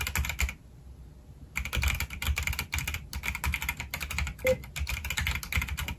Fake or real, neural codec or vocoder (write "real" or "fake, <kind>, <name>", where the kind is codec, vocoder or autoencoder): real